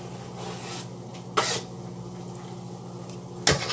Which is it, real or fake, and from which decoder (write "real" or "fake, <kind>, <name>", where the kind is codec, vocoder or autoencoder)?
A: real